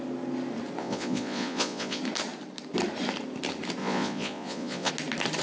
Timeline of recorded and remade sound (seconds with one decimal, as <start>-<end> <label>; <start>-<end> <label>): 0.0-0.8 recorded; 0.8-2.0 remade; 2.0-3.8 recorded; 3.8-4.9 remade; 4.9-5.4 recorded